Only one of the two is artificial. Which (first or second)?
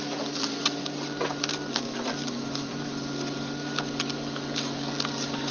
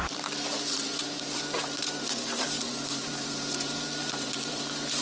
second